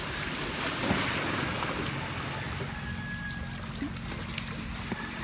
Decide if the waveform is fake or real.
real